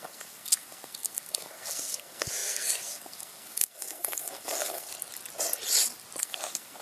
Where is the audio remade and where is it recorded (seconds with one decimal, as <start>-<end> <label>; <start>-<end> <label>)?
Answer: 0.0-4.9 remade; 4.9-6.2 recorded; 6.2-6.8 remade